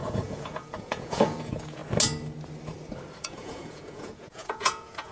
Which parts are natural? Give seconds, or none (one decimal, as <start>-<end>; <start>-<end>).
1.8-3.2